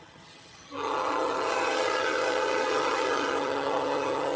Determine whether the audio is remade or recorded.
remade